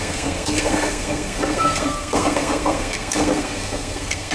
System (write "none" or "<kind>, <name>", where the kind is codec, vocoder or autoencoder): codec, SNAC